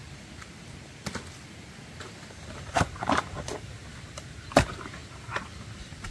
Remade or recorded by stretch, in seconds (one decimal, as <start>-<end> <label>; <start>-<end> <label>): 0.0-2.0 recorded; 2.0-3.9 remade; 3.9-4.5 recorded; 4.5-6.1 remade